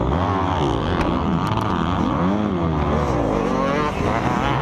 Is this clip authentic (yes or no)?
yes